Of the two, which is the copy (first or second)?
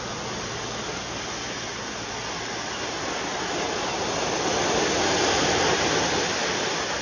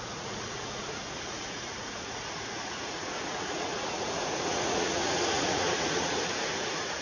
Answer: second